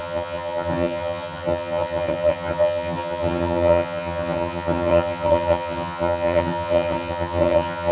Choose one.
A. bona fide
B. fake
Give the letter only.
B